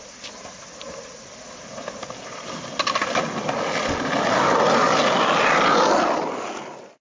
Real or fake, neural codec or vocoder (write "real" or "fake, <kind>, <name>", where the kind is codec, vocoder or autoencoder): real